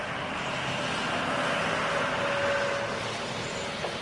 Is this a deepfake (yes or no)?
no